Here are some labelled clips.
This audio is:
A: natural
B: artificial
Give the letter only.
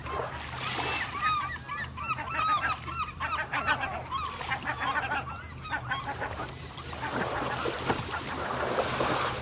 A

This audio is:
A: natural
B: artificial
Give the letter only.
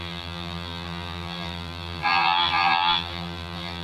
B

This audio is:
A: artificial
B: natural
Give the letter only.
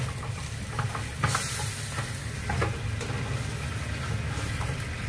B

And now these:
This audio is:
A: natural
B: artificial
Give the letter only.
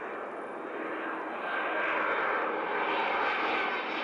A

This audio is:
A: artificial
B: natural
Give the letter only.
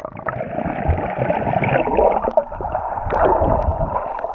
B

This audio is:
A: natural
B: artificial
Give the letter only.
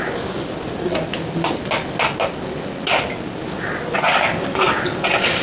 A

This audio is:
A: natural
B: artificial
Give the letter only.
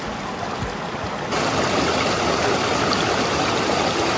A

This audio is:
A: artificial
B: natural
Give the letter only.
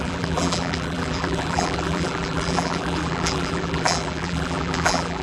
A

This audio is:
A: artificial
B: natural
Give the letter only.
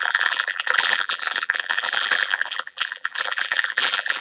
A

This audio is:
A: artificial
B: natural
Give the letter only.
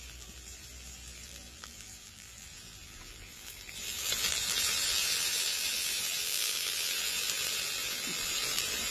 A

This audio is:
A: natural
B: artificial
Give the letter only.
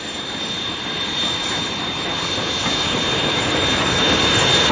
B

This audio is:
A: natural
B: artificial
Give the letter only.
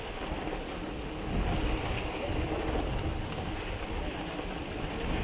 A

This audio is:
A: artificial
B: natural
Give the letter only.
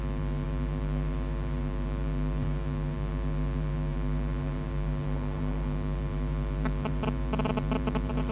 A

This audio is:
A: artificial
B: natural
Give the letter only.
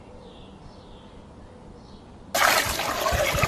B